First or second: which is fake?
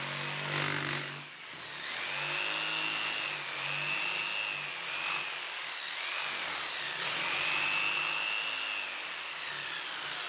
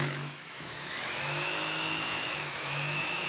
second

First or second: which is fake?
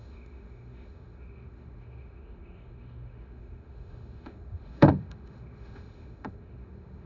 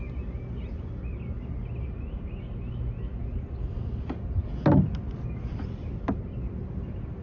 first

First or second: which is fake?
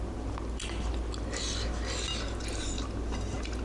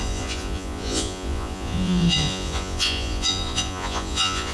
second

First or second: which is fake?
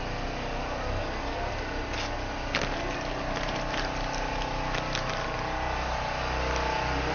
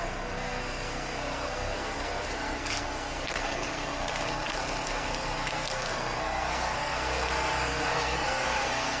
second